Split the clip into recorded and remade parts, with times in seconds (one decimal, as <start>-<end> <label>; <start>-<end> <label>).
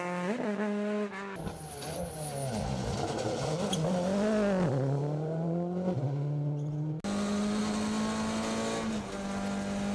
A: 0.0-9.9 recorded